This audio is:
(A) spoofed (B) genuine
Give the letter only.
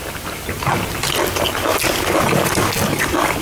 B